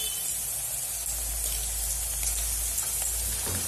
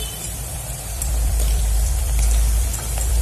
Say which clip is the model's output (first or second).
second